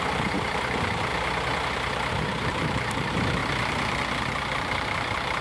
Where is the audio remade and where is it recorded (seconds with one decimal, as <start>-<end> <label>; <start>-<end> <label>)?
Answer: 0.0-1.1 remade; 1.1-2.1 recorded; 2.1-3.4 remade; 3.4-4.2 recorded; 4.2-5.4 remade